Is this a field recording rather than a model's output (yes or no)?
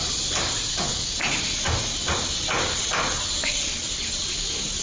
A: yes